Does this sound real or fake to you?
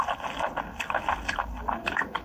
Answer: real